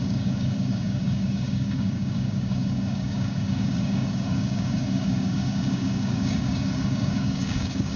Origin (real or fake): fake